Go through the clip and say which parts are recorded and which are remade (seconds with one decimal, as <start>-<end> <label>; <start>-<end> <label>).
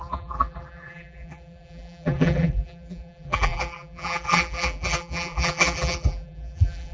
0.0-6.9 remade